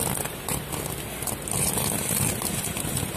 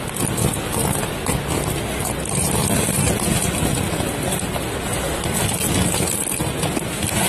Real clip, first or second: second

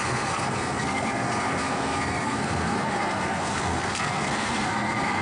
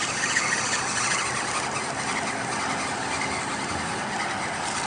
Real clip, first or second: second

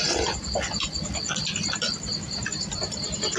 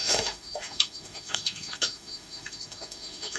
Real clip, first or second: first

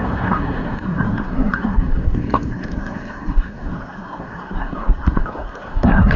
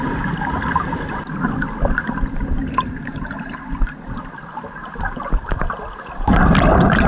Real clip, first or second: second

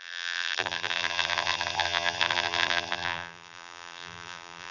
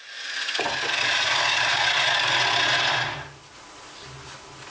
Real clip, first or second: second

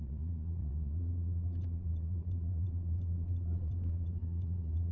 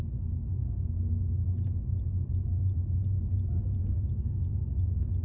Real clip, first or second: second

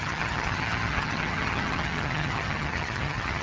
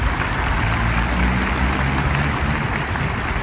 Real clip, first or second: second